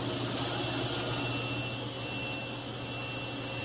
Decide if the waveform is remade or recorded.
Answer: recorded